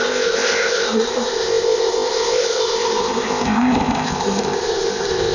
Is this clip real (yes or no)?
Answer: no